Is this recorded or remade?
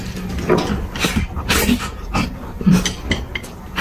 recorded